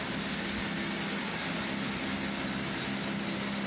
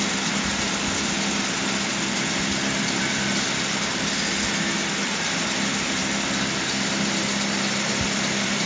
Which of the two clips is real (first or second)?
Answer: first